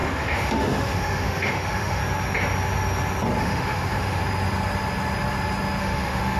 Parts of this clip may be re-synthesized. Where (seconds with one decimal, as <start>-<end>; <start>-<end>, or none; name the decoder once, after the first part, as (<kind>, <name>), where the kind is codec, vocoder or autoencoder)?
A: 0.0-2.0 (autoencoder, DAC-VAE); 3.4-4.2; 5.8-6.4